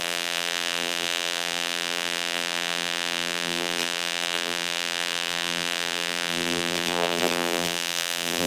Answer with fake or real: fake